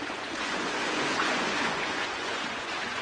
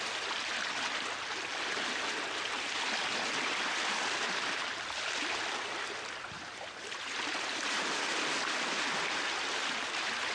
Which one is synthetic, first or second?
first